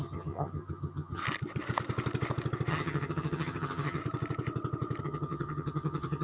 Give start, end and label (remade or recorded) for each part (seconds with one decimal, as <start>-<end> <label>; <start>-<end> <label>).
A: 0.0-1.2 remade; 1.2-2.7 recorded; 2.7-4.0 remade; 4.0-5.0 recorded; 5.0-6.2 remade